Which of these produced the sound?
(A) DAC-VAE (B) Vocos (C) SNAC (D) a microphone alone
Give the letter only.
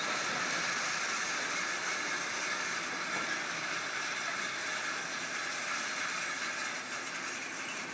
D